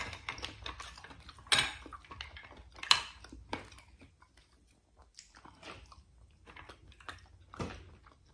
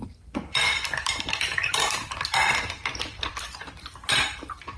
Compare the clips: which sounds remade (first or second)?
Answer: second